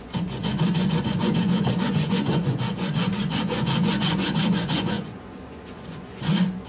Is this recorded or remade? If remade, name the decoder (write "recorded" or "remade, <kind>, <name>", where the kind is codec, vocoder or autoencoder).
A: remade, vocoder, Vocos